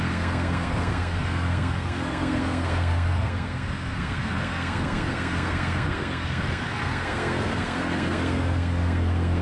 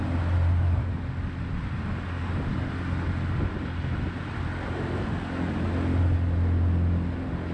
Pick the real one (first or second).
second